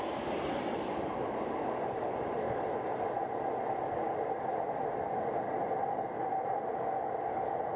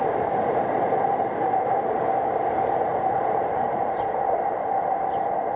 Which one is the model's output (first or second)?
second